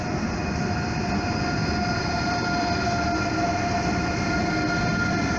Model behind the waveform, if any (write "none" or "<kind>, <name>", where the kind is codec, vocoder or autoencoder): none